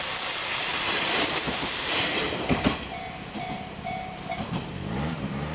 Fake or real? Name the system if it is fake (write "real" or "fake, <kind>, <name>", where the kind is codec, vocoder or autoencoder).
fake, vocoder, BigVGAN v2